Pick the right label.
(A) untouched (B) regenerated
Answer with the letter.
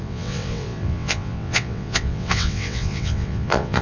B